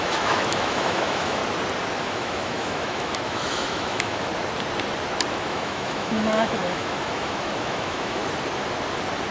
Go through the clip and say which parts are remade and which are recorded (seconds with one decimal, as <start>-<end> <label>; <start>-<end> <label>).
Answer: 0.0-1.4 remade; 1.4-2.0 recorded; 2.0-4.3 remade; 4.3-5.3 recorded; 5.3-8.2 remade; 8.2-9.3 recorded